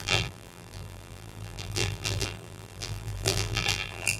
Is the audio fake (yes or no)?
yes